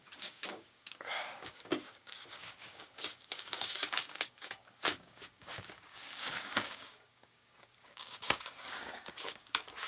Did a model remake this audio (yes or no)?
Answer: yes